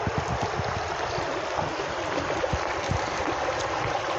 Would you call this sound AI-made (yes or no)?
no